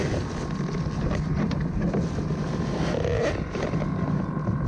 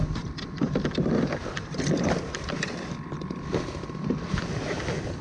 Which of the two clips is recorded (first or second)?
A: first